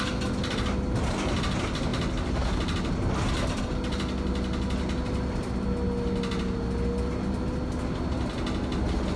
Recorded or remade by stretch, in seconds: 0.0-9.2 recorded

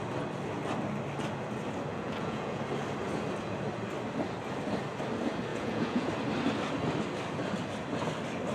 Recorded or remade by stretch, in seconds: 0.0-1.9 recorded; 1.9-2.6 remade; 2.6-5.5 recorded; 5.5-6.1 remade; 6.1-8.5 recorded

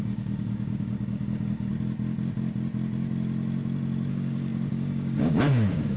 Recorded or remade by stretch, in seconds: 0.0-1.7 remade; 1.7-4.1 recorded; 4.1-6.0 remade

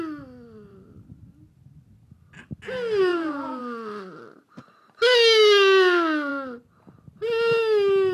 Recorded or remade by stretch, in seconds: 0.0-3.1 recorded; 3.1-3.6 remade; 3.6-8.1 recorded